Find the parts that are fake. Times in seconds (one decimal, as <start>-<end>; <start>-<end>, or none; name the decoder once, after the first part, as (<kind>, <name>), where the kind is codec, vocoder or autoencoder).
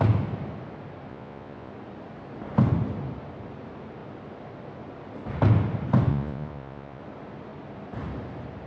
1.1-1.7 (vocoder, Vocos); 6.1-7.0